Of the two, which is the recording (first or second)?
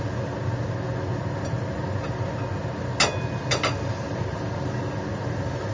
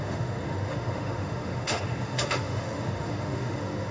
first